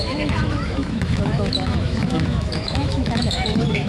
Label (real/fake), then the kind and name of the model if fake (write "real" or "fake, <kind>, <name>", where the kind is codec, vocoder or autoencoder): fake, autoencoder, DAC-VAE